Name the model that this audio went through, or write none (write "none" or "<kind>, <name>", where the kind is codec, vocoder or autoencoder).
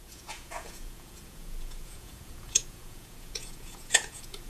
vocoder, Vocos